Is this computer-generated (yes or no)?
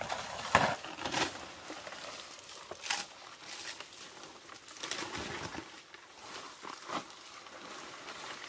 no